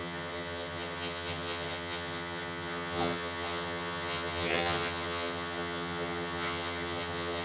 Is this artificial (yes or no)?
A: yes